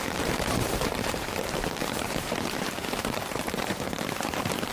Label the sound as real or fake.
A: fake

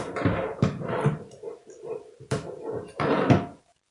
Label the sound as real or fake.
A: fake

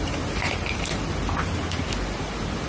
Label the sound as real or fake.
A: fake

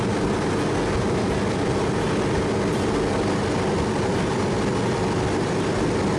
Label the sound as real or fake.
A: real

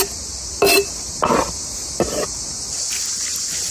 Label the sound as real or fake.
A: real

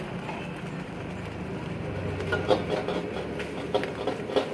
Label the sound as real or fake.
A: real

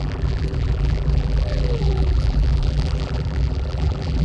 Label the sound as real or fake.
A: fake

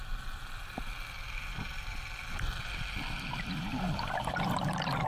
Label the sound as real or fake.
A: fake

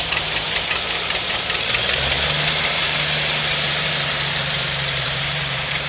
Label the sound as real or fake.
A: fake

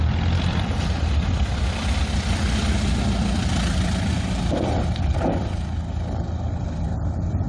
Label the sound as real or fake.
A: fake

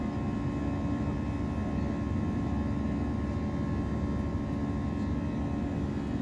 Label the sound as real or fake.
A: real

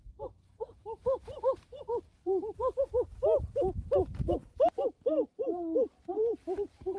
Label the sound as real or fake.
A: fake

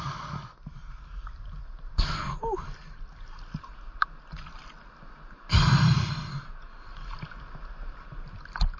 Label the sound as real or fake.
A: real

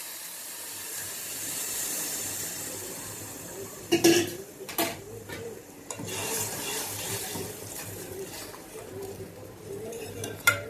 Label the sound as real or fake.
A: fake